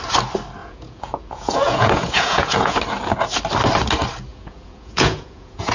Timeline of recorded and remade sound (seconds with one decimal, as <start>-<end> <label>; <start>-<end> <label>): 0.0-0.6 recorded; 0.6-2.8 remade; 2.8-4.3 recorded; 4.3-5.7 remade